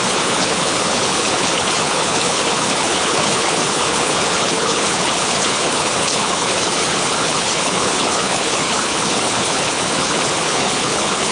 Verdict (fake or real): fake